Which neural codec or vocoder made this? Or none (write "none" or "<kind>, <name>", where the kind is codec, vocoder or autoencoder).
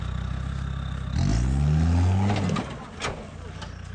none